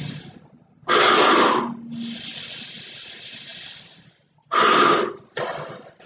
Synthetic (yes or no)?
no